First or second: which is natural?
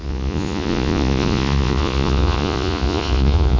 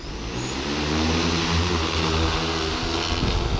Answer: second